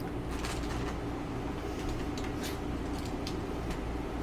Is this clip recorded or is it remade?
recorded